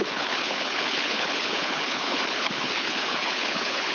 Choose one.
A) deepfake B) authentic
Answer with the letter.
A